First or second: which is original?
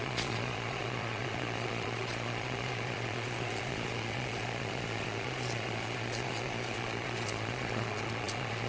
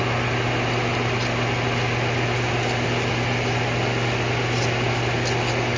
second